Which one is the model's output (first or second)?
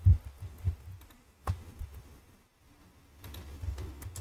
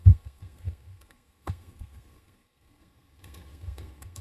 second